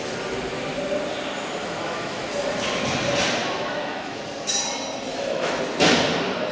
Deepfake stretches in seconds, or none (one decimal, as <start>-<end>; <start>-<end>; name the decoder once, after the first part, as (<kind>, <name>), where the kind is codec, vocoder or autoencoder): 1.6-2.3 (autoencoder, DAC-VAE); 3.4-4.2; 5.1-5.6